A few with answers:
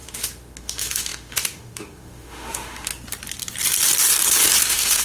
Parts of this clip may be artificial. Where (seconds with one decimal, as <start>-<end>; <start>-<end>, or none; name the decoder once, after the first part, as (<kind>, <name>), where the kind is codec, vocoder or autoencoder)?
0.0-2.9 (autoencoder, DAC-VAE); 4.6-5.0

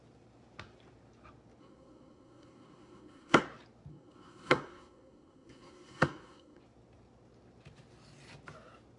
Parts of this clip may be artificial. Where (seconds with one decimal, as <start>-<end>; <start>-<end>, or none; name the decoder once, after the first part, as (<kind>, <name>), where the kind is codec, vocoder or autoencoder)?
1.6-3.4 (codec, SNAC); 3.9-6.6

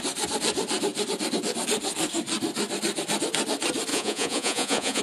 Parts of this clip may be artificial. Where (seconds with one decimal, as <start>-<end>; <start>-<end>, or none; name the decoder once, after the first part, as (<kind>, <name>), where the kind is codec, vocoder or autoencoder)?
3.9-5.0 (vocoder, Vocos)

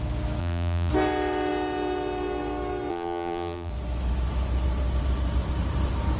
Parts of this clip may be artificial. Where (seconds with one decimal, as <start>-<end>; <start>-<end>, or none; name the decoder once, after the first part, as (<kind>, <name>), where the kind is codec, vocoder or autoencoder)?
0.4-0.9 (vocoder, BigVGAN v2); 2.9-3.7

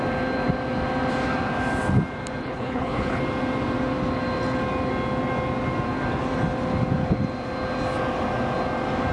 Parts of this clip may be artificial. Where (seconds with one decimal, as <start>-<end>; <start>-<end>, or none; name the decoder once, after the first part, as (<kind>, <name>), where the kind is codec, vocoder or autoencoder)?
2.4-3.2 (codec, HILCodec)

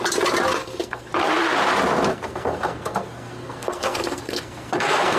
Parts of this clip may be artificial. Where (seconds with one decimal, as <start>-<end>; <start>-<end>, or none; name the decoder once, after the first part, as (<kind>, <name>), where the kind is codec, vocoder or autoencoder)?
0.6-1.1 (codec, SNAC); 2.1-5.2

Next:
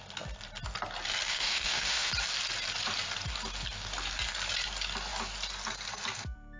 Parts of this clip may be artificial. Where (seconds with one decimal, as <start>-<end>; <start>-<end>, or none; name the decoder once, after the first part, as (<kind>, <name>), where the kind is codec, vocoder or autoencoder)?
1.3-2.1 (autoencoder, DAC-VAE)